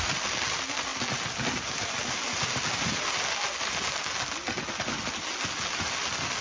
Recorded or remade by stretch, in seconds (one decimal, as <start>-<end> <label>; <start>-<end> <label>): 0.0-6.4 recorded